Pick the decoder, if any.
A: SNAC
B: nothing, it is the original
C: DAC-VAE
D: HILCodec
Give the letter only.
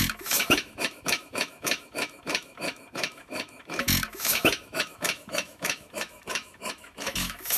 C